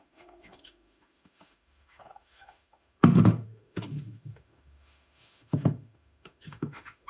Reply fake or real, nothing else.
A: fake